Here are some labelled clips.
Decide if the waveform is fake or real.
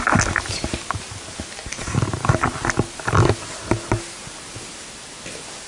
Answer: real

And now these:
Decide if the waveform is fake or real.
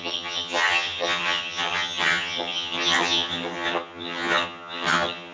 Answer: fake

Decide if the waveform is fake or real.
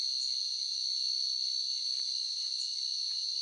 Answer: real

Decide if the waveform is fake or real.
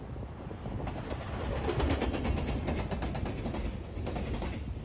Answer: real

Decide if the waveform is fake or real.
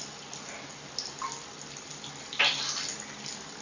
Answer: real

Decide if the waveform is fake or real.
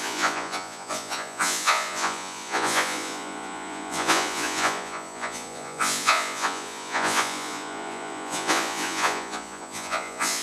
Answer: fake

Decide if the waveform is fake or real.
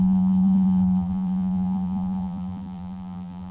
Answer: fake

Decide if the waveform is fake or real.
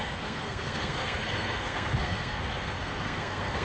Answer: fake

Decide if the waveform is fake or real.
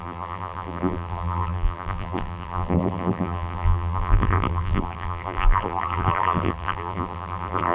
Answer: fake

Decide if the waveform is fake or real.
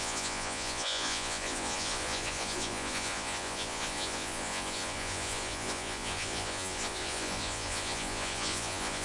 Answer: fake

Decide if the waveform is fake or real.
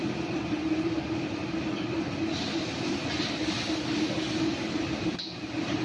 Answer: fake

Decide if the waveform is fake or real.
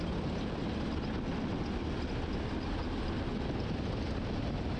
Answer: real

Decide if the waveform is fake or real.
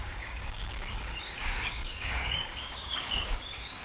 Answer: fake